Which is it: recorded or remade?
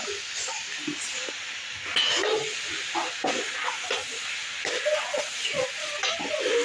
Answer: recorded